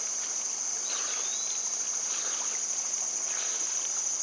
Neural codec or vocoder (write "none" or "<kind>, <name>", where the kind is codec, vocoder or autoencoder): none